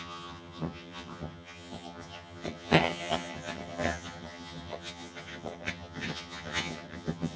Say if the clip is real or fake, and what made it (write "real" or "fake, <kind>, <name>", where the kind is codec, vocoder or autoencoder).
fake, vocoder, HiFi-GAN